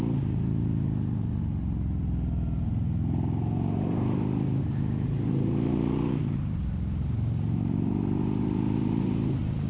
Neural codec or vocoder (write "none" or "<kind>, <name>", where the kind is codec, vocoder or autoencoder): vocoder, BigVGAN v2